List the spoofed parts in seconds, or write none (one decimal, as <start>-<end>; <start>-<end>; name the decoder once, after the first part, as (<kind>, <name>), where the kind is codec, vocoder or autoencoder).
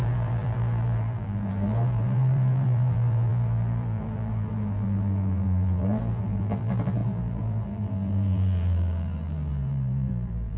0.0-10.6 (vocoder, BigVGAN v2)